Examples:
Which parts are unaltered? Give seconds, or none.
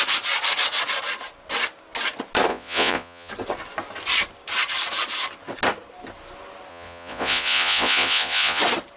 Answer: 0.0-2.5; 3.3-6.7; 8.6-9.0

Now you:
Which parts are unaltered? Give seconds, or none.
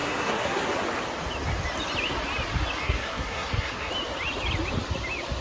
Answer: 0.6-2.8; 3.9-5.4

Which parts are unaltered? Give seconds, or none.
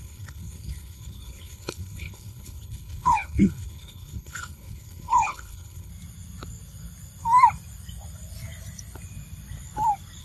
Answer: 5.9-10.2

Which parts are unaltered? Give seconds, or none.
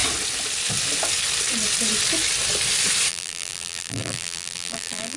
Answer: 0.0-3.1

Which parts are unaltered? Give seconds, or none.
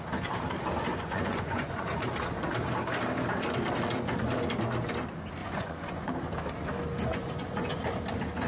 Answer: 0.0-0.9; 1.8-5.4; 6.1-7.1; 7.8-8.5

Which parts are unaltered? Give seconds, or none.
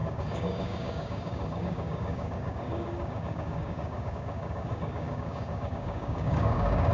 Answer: none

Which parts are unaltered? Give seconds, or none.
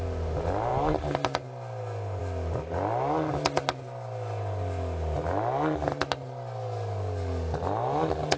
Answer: 0.0-8.4